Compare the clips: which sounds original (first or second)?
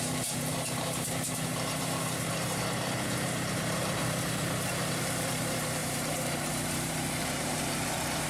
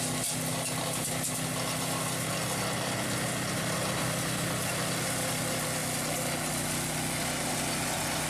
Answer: second